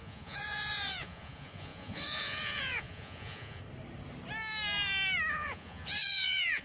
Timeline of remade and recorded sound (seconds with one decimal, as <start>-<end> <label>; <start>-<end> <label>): 0.0-3.6 remade; 3.6-5.3 recorded; 5.3-6.6 remade